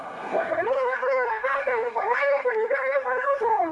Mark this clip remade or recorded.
remade